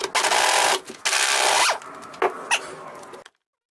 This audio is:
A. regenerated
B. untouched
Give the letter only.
B